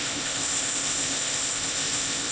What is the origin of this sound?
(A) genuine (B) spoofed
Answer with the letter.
B